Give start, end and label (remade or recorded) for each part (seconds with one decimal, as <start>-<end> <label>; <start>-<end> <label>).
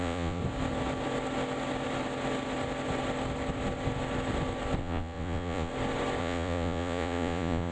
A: 0.0-0.4 remade; 0.4-4.8 recorded; 4.8-5.7 remade; 5.7-6.2 recorded; 6.2-7.7 remade